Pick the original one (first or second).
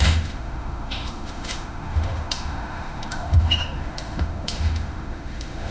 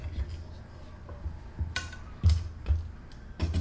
second